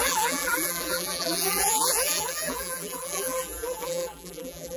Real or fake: fake